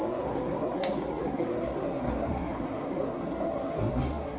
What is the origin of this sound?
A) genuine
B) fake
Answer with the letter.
B